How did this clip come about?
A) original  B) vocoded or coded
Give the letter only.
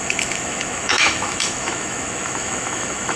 B